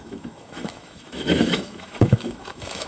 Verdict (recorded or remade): remade